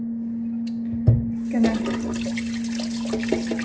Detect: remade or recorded recorded